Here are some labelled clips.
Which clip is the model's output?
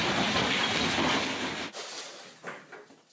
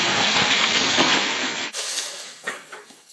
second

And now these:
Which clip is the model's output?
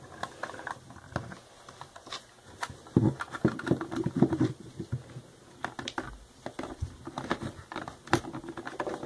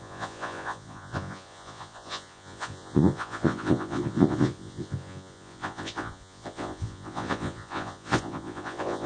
second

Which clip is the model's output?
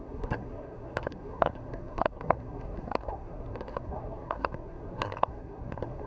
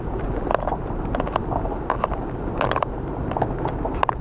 first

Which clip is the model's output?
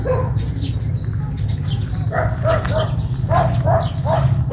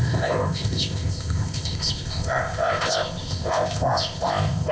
second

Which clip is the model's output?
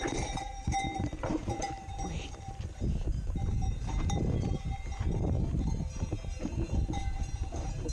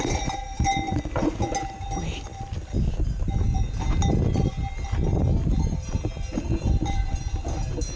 first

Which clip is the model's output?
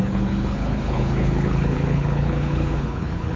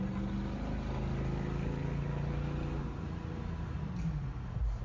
first